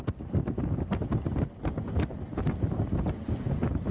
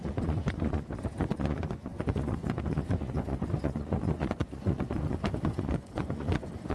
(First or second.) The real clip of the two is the first